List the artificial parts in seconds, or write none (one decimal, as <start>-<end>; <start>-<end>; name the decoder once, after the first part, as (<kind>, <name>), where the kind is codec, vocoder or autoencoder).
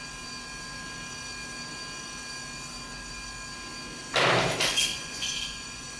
4.9-6.0 (vocoder, Vocos)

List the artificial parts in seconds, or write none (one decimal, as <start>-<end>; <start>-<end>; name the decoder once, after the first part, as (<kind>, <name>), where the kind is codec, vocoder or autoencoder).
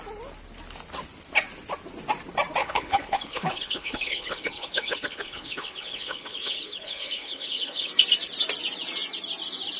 2.6-7.9 (codec, HILCodec)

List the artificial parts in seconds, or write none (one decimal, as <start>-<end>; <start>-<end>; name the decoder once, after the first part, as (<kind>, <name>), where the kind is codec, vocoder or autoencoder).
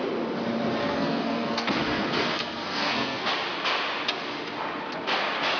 0.8-3.3 (codec, SNAC)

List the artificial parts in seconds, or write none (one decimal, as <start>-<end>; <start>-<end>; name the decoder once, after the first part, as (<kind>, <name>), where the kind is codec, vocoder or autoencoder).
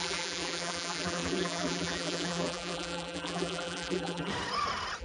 0.0-4.3 (vocoder, BigVGAN v2)